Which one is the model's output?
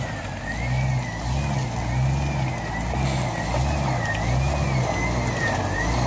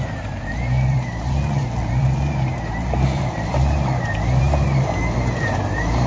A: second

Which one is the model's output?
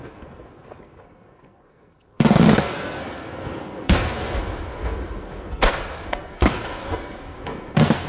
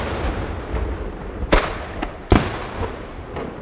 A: first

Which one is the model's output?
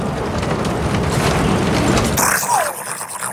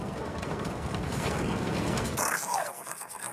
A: second